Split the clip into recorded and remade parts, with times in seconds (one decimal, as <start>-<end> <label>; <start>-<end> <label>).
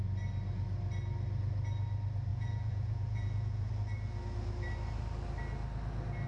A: 0.0-2.3 recorded; 2.3-3.7 remade; 3.7-6.3 recorded